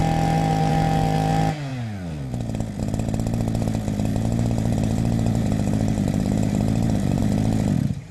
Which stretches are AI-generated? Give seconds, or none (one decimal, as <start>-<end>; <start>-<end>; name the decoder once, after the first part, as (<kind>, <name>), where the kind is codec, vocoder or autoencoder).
4.1-7.2 (vocoder, BigVGAN v2)